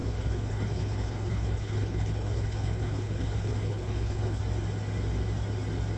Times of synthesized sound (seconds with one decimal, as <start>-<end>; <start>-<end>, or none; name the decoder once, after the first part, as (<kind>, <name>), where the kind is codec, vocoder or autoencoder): 0.0-4.4 (codec, HILCodec)